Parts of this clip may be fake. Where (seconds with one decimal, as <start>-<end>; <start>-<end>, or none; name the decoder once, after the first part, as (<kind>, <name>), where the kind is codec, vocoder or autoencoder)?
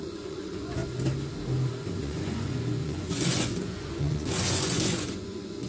0.0-0.8 (vocoder, Vocos); 2.0-5.7